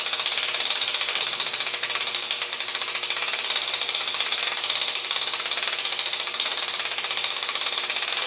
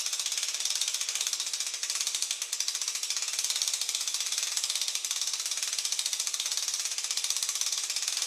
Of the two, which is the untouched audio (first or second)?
first